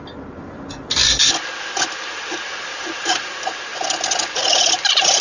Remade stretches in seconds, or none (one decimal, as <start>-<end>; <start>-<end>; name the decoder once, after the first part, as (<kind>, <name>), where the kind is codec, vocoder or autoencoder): 1.6-3.7 (vocoder, BigVGAN v2); 4.3-5.2